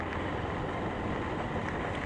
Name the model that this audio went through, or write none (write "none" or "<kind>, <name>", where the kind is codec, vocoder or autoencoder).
none